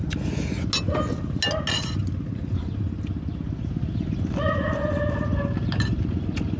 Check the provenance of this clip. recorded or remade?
recorded